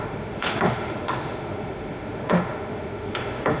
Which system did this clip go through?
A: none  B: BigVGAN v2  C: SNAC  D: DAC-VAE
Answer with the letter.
D